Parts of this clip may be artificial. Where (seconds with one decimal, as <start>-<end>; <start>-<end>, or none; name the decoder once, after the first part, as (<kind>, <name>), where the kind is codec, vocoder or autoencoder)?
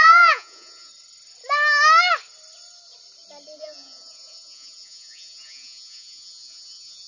0.0-0.9 (vocoder, Vocos); 3.6-7.1